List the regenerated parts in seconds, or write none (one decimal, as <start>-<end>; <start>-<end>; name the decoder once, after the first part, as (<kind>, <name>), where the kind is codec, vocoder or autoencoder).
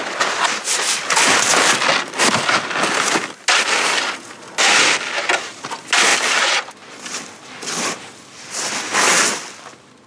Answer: 0.7-1.5 (vocoder, BigVGAN v2); 6.1-10.1